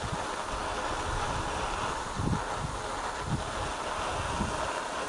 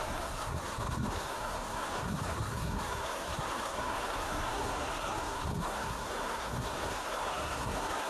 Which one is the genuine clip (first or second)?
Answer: first